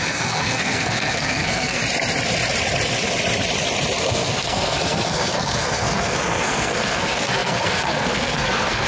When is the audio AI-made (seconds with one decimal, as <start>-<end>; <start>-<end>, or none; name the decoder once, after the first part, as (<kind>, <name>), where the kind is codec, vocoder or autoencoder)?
0.0-1.8 (codec, SNAC); 4.0-8.9